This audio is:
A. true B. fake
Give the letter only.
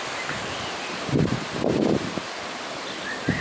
B